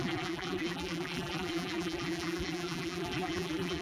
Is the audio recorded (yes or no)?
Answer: no